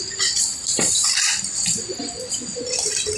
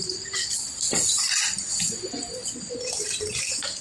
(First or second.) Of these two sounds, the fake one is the first